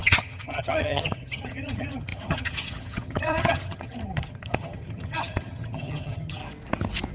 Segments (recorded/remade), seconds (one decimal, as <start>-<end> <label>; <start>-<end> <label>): 0.0-6.4 remade; 6.4-7.1 recorded